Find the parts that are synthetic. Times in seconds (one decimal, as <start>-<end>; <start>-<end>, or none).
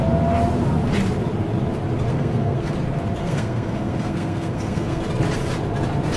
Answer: 2.1-2.7; 3.2-5.0